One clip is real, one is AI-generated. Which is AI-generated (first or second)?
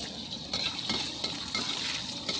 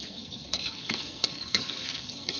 second